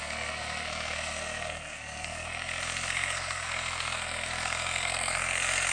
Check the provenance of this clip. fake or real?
fake